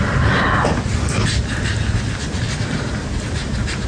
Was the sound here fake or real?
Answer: real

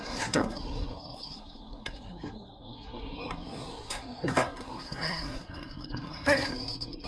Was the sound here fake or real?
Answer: fake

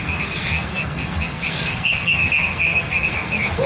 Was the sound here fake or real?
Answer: fake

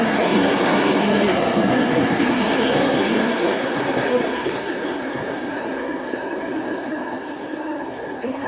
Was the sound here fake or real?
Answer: fake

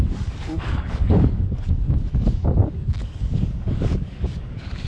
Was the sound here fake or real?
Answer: fake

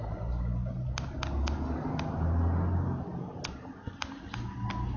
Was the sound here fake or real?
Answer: real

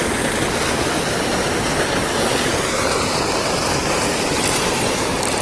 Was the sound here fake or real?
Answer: real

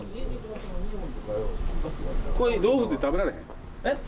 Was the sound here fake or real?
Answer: real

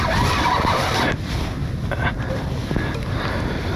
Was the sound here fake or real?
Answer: real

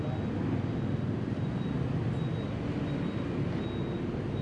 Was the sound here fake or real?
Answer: real